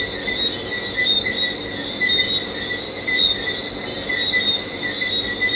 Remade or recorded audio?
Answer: recorded